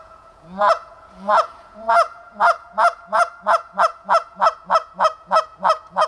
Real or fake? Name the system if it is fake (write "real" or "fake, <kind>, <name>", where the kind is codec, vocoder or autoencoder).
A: fake, vocoder, Vocos